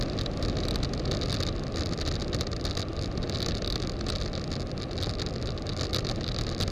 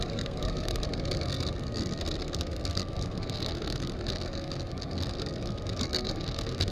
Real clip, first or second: first